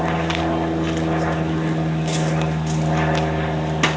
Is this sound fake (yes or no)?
no